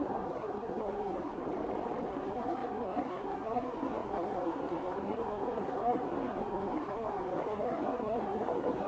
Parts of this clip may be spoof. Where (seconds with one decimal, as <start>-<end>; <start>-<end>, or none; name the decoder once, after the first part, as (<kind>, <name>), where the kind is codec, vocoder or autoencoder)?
0.0-1.4 (codec, SNAC); 2.1-8.9